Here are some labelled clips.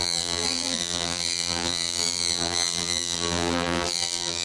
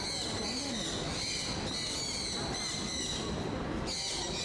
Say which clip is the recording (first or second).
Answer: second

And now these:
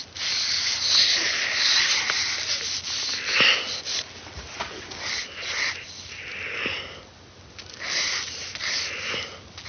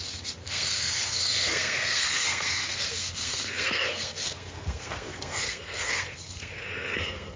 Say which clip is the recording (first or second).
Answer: first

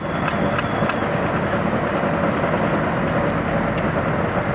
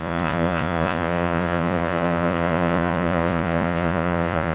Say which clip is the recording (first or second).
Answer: first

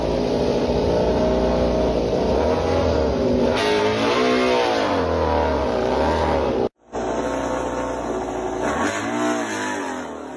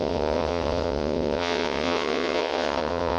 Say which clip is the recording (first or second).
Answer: first